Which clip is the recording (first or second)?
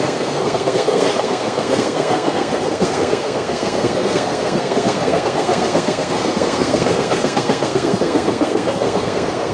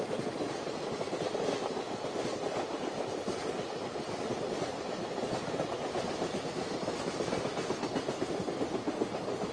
second